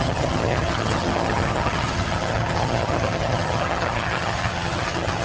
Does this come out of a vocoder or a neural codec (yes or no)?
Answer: yes